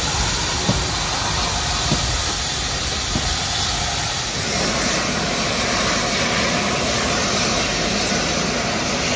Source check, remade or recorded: recorded